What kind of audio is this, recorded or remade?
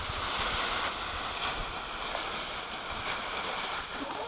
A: recorded